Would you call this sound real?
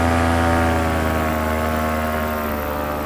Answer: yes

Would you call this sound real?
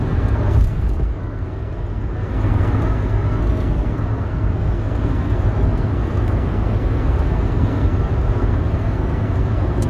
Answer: no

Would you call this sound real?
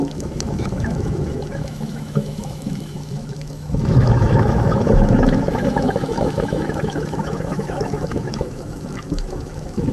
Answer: no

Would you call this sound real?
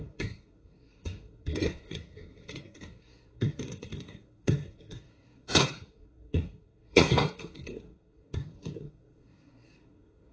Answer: no